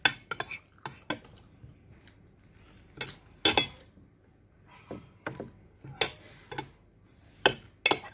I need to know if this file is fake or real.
real